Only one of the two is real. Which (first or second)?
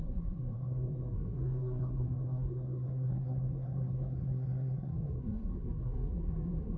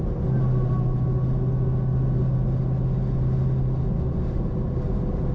second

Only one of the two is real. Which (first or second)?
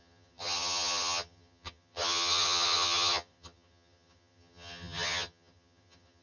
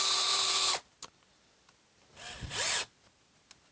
second